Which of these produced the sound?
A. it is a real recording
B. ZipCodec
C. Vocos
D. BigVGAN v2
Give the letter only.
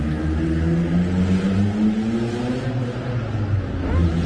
A